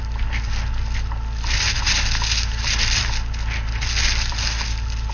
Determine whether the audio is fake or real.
real